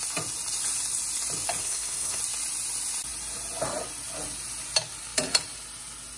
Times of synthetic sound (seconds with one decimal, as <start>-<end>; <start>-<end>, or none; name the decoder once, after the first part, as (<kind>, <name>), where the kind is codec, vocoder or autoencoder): 1.6-2.2 (codec, SNAC)